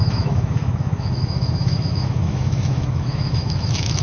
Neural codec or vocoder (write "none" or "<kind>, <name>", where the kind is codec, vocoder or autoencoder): autoencoder, DAC-VAE